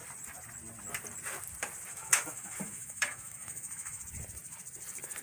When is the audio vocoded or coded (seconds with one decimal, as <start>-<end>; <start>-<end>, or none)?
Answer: 1.9-4.0